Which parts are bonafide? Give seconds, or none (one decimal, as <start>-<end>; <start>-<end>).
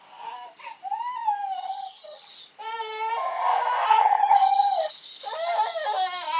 0.0-1.6; 2.3-3.9; 4.9-6.4